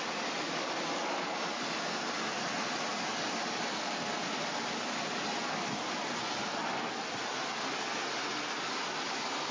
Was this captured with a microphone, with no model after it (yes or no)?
yes